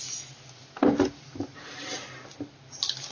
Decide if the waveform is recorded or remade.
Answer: recorded